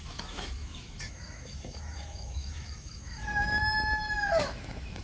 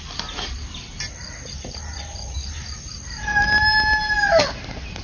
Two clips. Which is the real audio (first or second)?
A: second